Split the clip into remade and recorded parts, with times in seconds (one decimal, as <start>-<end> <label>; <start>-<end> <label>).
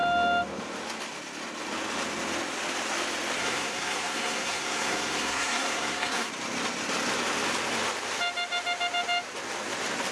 0.0-3.4 recorded; 3.4-6.3 remade; 6.3-10.1 recorded